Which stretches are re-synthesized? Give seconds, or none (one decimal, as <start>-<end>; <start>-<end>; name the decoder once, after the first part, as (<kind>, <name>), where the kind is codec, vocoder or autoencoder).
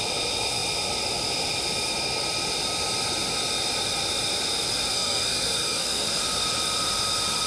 4.9-6.2 (codec, SNAC)